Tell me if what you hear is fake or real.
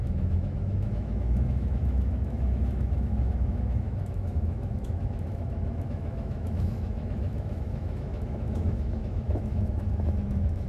fake